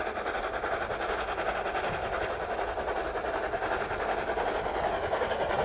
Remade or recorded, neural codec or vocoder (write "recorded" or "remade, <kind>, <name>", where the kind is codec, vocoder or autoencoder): recorded